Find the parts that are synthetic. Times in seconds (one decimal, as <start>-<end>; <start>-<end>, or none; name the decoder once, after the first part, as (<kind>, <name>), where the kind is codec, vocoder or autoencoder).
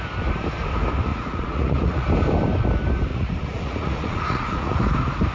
1.1-2.1 (vocoder, Vocos); 3.1-4.8